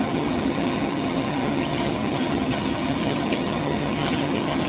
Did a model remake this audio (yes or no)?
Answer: yes